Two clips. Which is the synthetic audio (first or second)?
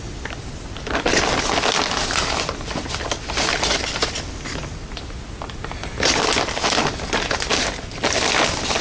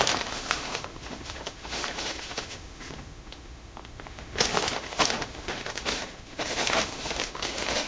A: second